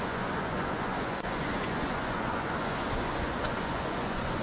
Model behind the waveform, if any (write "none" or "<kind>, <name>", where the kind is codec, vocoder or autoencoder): vocoder, Vocos